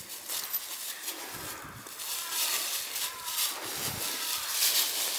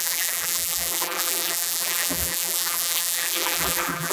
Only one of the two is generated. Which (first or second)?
second